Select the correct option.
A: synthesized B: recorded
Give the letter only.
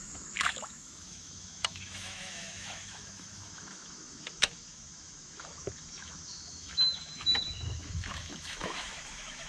A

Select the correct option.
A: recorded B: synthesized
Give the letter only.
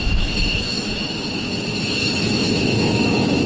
B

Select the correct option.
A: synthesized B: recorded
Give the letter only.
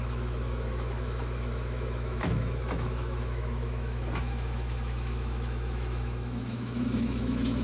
A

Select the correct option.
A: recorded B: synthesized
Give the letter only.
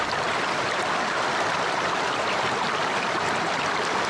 A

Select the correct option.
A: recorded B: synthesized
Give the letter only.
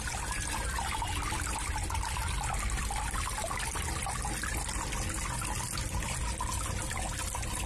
A